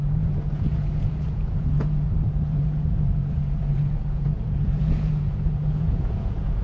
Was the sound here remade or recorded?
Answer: remade